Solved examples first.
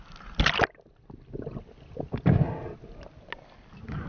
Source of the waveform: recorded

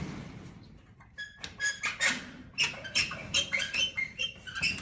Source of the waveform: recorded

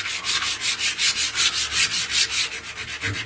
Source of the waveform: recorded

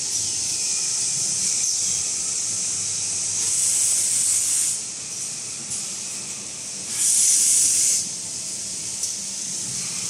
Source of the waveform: recorded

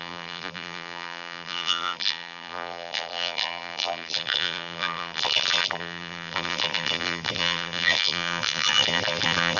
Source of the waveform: remade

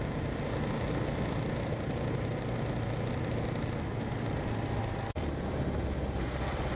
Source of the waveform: recorded